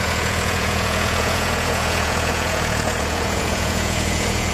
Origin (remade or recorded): remade